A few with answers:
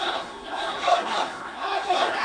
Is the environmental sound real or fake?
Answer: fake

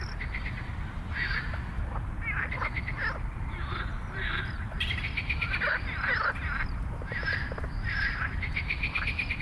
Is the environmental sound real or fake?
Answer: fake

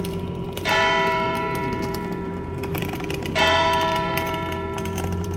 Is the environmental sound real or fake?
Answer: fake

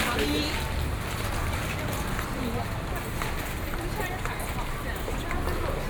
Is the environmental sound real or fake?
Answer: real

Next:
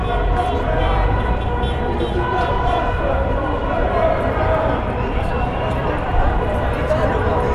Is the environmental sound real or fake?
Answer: fake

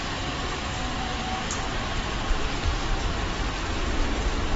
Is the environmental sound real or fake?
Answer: fake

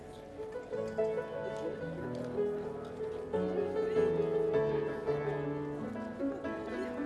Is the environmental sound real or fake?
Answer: real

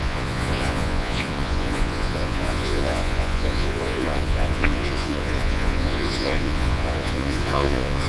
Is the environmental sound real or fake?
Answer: fake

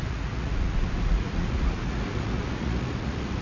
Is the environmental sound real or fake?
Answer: fake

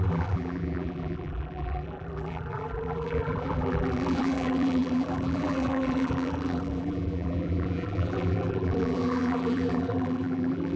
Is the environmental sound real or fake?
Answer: fake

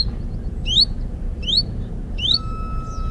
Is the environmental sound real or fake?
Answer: real